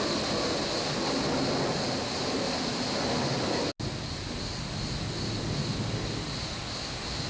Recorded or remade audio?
recorded